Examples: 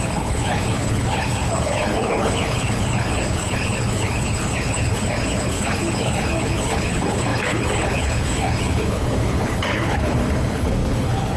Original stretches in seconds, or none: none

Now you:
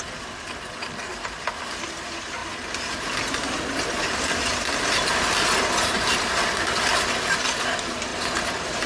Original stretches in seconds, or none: 0.0-8.9